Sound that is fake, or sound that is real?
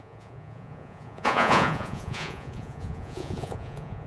fake